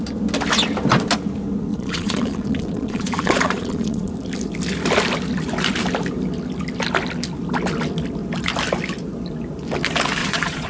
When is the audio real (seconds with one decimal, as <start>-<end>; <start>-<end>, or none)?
0.0-1.7; 4.1-10.2